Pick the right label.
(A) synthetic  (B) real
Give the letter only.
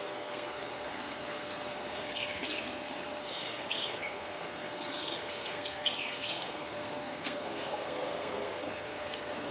A